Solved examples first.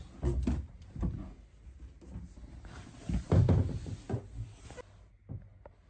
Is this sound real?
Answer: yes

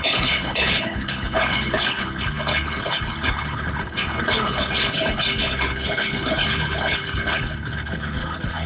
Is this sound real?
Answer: no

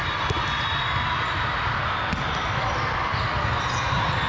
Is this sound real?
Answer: yes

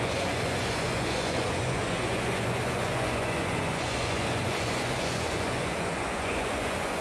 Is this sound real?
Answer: no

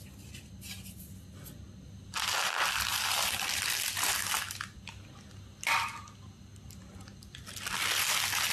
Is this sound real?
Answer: yes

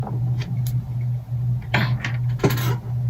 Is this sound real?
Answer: yes